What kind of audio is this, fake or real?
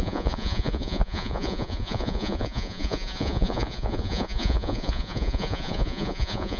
fake